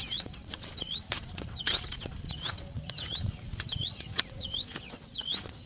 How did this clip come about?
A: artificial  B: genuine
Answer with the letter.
A